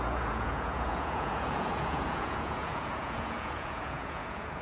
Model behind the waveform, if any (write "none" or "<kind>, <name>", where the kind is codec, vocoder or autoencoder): vocoder, Vocos